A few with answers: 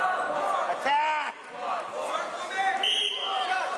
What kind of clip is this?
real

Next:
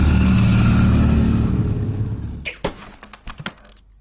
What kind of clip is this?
real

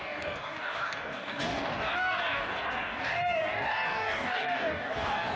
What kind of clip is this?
fake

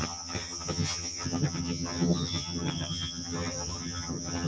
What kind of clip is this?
fake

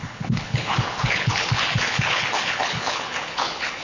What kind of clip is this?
fake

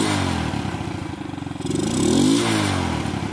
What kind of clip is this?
real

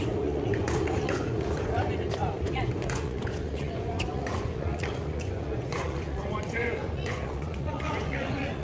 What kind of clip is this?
fake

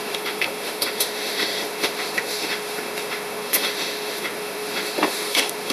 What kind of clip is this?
fake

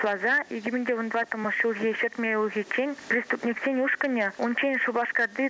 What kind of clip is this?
real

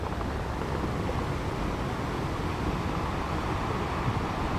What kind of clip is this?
real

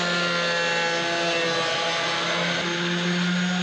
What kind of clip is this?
real